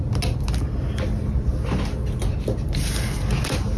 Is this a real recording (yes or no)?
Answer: yes